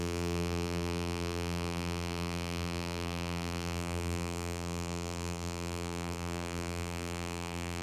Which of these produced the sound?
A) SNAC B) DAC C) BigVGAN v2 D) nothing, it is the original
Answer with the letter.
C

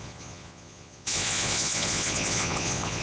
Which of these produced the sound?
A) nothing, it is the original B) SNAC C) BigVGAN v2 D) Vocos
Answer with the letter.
D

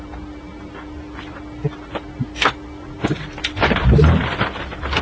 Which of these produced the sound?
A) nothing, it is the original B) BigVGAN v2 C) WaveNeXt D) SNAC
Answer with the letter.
A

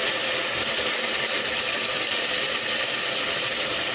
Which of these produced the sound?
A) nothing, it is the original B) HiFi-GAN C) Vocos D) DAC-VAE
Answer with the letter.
A